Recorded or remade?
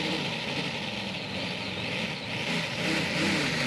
recorded